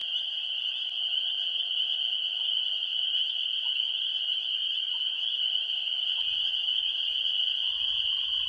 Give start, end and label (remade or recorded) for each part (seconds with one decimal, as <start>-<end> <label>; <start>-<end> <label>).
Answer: 0.0-8.5 recorded